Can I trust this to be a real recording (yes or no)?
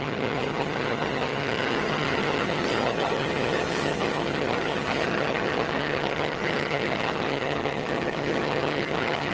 no